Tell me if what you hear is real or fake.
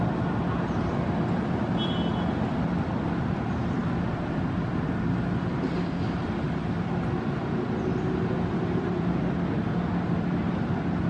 real